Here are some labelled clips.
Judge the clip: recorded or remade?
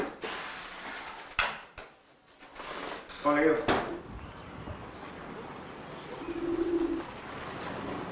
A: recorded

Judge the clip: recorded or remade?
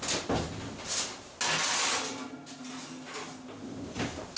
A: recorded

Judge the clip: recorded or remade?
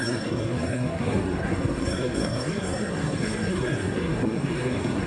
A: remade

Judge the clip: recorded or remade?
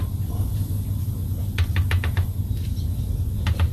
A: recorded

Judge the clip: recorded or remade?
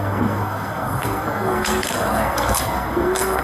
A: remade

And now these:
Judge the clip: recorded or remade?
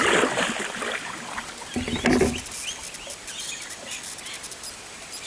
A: recorded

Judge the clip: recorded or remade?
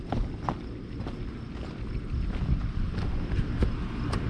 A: recorded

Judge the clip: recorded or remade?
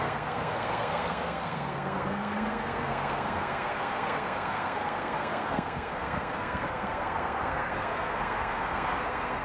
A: remade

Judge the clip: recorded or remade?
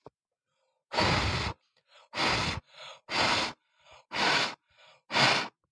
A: recorded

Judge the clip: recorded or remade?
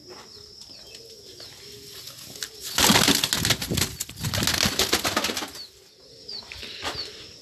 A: recorded